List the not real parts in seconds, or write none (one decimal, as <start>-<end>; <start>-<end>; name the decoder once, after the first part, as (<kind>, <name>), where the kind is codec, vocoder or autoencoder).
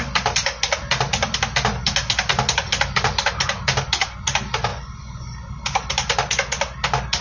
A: 4.7-5.5 (vocoder, Vocos)